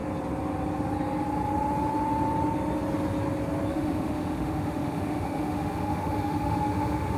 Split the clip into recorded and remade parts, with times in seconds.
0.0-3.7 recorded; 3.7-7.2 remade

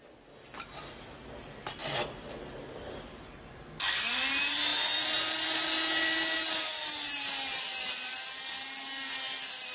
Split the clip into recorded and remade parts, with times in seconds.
0.0-9.7 recorded

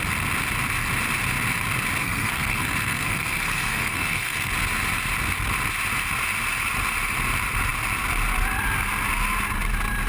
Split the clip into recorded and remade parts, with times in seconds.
0.0-2.0 recorded; 2.0-4.5 remade; 4.5-10.1 recorded

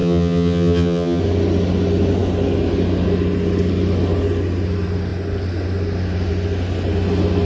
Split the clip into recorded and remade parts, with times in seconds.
0.0-1.2 remade; 1.2-7.4 recorded

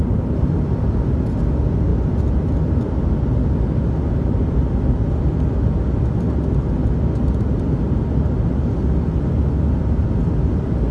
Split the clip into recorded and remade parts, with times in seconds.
0.0-10.9 recorded